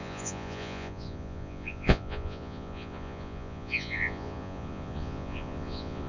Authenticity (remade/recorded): remade